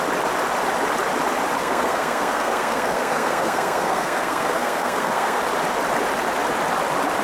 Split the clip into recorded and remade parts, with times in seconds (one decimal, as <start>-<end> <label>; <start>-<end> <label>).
0.0-1.6 recorded; 1.6-5.4 remade; 5.4-7.2 recorded